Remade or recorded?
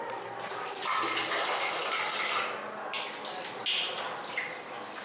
recorded